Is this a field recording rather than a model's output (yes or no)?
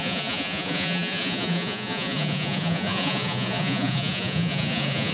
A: no